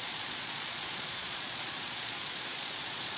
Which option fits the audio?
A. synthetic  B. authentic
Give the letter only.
A